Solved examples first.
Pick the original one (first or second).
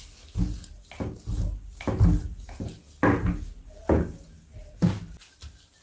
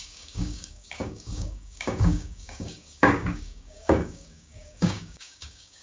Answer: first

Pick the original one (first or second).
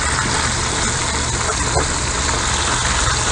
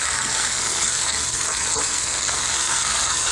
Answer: first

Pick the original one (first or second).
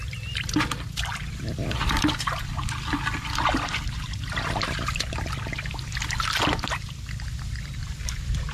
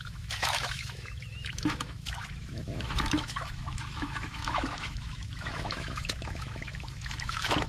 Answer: first